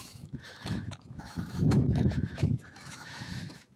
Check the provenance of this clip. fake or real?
fake